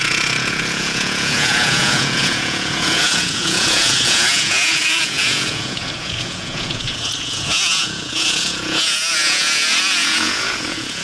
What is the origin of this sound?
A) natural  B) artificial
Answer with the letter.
B